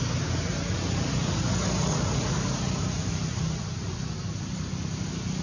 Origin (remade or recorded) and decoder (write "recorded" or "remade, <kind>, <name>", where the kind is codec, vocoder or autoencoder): recorded